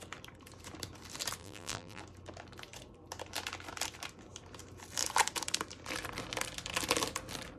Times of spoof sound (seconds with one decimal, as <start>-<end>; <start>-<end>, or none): 1.4-2.0